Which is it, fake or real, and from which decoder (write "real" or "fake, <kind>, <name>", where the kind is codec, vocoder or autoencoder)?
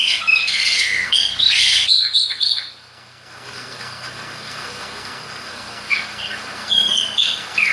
fake, codec, SNAC